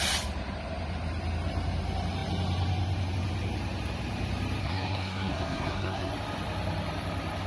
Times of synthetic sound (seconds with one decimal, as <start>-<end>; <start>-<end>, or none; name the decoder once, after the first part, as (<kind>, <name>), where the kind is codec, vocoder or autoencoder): 4.6-6.1 (codec, SNAC)